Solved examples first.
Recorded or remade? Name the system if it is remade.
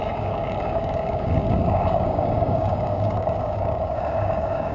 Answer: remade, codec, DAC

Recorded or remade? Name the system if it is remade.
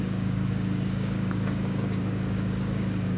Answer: remade, codec, DAC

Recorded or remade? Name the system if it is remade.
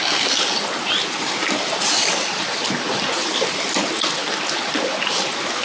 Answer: recorded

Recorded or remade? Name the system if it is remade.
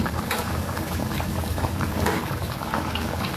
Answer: remade, codec, DAC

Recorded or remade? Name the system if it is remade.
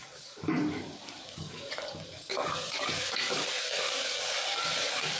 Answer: remade, codec, DAC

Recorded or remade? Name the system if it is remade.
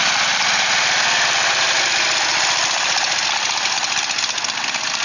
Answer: recorded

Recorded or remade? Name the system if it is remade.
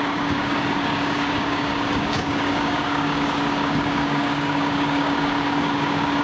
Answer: remade, codec, DAC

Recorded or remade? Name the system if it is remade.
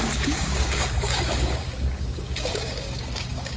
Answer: remade, codec, DAC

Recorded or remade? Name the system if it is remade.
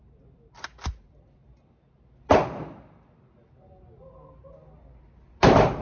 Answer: recorded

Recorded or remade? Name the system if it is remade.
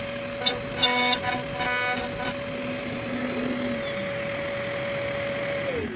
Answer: recorded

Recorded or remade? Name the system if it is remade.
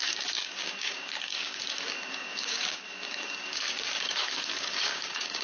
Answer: remade, codec, DAC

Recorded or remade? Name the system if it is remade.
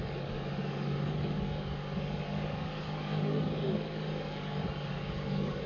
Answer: remade, codec, DAC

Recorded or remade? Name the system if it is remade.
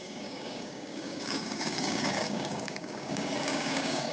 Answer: remade, codec, DAC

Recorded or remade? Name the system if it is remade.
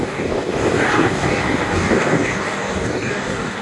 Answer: remade, codec, DAC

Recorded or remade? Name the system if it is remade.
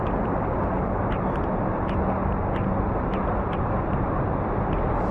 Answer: recorded